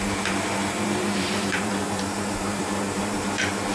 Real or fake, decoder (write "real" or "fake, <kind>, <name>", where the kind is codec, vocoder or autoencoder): fake, vocoder, BigVGAN v2